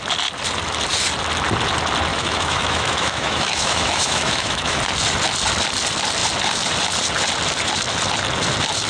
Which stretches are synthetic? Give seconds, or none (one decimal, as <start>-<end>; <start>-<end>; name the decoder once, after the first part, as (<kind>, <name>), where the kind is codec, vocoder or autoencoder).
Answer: 2.1-4.8 (autoencoder, DAC-VAE)